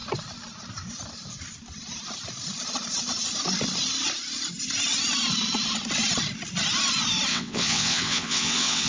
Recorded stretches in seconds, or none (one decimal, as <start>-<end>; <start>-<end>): 0.0-7.3